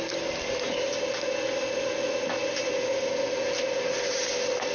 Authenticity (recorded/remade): recorded